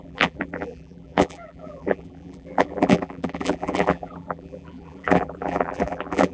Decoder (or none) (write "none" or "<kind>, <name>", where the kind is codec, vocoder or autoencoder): vocoder, BigVGAN v2